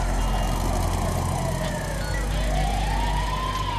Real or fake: real